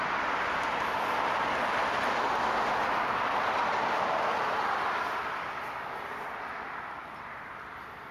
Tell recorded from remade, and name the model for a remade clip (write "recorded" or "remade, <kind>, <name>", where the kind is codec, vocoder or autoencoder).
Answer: remade, vocoder, BigVGAN v2